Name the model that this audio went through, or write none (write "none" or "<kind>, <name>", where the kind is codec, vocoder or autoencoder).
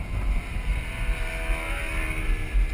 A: none